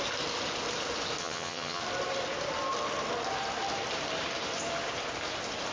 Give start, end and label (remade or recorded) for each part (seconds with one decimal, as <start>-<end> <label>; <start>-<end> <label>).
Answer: 0.0-1.2 recorded; 1.2-1.8 remade; 1.8-5.7 recorded